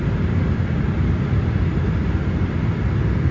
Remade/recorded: recorded